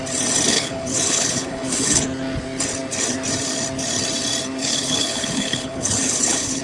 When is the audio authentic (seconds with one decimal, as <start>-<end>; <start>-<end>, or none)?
0.0-0.5; 2.0-4.6